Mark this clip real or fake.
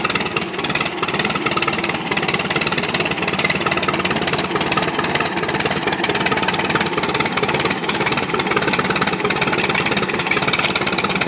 real